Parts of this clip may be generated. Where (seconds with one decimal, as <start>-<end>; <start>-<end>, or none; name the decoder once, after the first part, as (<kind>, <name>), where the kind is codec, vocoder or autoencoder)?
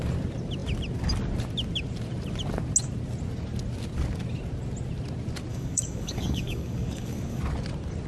5.5-7.4 (codec, DAC)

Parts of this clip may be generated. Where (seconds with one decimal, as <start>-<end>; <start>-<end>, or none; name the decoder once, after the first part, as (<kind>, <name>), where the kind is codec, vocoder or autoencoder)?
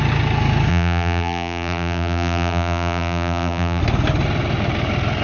0.7-3.8 (vocoder, BigVGAN v2)